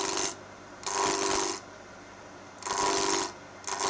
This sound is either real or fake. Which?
real